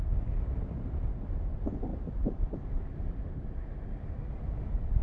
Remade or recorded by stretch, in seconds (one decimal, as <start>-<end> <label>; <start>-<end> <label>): 0.0-1.9 recorded; 1.9-5.0 remade